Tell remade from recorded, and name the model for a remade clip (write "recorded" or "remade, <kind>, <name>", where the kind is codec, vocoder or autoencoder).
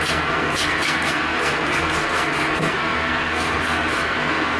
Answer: remade, codec, SNAC